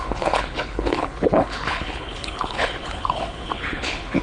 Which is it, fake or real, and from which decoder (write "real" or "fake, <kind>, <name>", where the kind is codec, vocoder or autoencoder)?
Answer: fake, codec, HILCodec